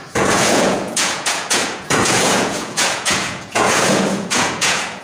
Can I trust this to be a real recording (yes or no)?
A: no